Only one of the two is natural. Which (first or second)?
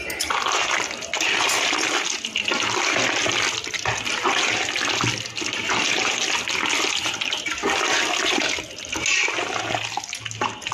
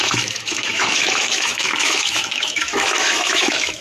first